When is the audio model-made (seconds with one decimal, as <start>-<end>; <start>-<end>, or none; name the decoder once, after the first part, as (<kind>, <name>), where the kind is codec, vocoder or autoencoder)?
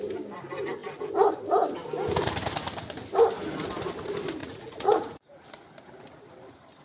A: 4.4-5.3 (vocoder, Vocos)